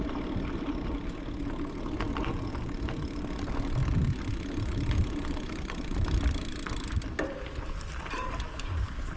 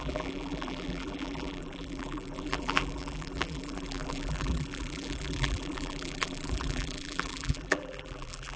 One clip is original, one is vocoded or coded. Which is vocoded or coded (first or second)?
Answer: second